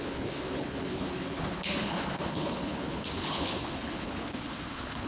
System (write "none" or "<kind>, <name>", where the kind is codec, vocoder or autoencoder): codec, HILCodec